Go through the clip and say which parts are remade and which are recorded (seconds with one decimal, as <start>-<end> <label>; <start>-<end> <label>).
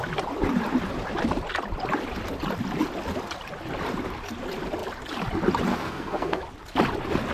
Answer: 0.0-5.7 recorded; 5.7-6.4 remade; 6.4-7.3 recorded